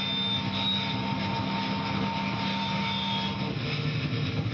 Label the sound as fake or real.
real